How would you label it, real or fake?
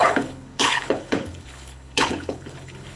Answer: fake